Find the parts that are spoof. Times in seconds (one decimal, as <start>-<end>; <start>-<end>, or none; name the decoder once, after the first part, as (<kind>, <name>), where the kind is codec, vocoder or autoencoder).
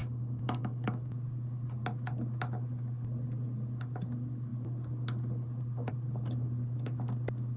0.0-1.1 (codec, DAC)